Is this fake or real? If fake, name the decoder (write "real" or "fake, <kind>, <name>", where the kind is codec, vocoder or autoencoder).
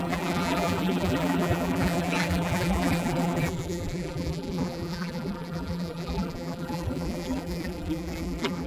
fake, vocoder, BigVGAN v2